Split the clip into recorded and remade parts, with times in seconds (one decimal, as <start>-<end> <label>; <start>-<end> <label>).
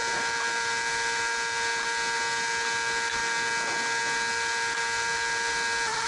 0.0-6.1 recorded